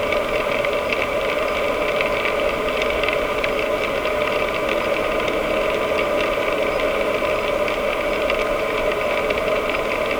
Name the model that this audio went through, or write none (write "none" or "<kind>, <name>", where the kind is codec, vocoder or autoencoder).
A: none